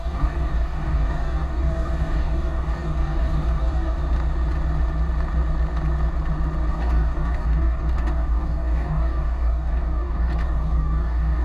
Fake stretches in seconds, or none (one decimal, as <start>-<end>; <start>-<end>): 0.0-4.0; 6.7-11.4